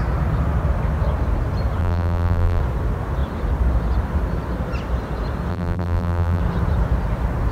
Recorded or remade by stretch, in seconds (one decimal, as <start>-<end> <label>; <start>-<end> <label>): 0.0-1.8 recorded; 1.8-2.6 remade; 2.6-5.5 recorded; 5.5-6.4 remade; 6.4-7.5 recorded

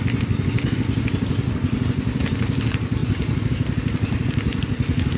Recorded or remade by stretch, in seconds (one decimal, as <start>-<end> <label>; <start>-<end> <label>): 0.0-5.2 recorded

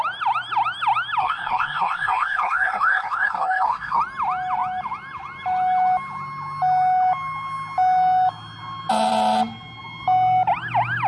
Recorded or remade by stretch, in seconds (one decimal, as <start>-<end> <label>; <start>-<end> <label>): 0.0-1.2 recorded; 1.2-4.0 remade; 4.0-11.1 recorded

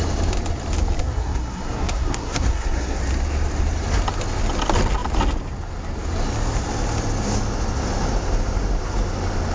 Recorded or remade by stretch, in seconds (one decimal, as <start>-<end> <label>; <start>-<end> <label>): 0.0-1.0 recorded; 1.0-3.0 remade; 3.0-9.5 recorded

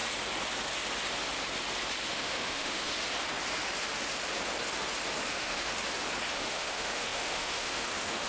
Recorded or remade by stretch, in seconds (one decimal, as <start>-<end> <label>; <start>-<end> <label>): 0.0-2.1 recorded; 2.1-2.9 remade; 2.9-5.3 recorded; 5.3-5.7 remade; 5.7-6.3 recorded; 6.3-8.3 remade

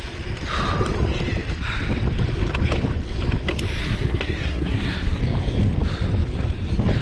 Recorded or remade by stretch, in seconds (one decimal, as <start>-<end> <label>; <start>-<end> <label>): 0.0-3.8 recorded; 3.8-5.2 remade; 5.2-7.0 recorded

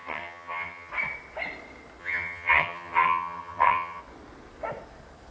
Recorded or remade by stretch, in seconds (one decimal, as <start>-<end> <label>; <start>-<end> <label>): 0.0-0.9 remade; 0.9-2.0 recorded; 2.0-4.0 remade; 4.0-5.3 recorded

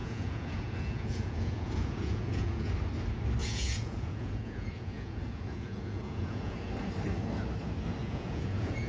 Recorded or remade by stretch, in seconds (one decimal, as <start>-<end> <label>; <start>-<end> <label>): 0.0-2.7 remade; 2.7-3.4 recorded; 3.4-6.7 remade; 6.7-8.0 recorded; 8.0-8.9 remade